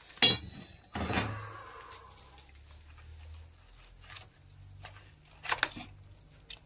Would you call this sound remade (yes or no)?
no